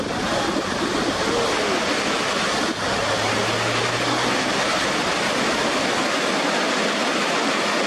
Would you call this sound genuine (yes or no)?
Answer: yes